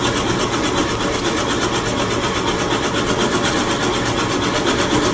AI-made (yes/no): no